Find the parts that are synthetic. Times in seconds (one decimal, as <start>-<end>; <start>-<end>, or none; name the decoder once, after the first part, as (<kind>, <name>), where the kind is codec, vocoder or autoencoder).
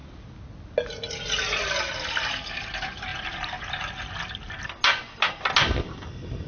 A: none